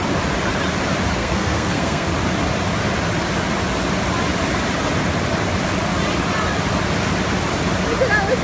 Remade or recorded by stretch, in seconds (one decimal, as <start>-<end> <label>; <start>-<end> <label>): 0.0-1.2 recorded; 1.2-2.1 remade; 2.1-8.4 recorded